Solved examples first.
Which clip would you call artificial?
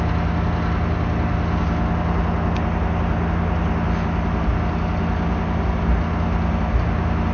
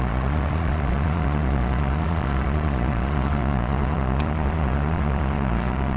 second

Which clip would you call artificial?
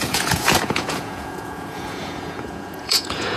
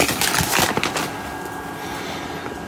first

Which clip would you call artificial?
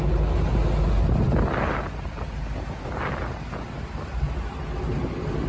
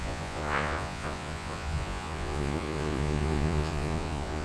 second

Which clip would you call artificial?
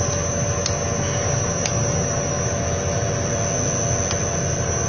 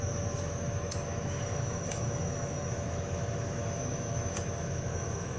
second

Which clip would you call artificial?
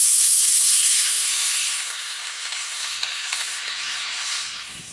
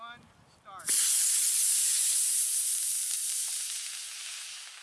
first